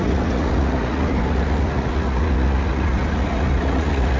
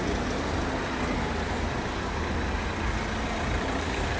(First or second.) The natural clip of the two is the second